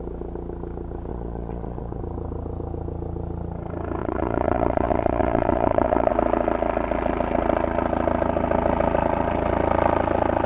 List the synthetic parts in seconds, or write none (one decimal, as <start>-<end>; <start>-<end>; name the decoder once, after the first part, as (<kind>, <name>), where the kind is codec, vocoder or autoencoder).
1.1-2.0 (vocoder, Vocos); 4.0-6.1